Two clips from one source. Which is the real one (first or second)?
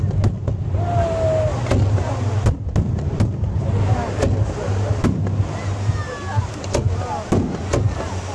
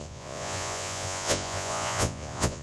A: first